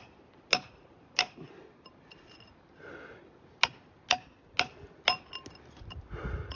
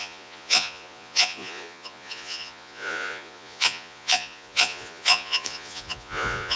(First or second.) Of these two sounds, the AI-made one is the second